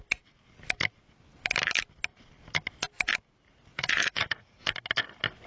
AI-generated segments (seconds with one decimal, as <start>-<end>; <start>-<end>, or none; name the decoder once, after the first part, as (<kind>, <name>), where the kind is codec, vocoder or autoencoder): 3.7-4.6 (vocoder, Vocos)